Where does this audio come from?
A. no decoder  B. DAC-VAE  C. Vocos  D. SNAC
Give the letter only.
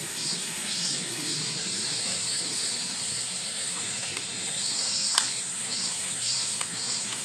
D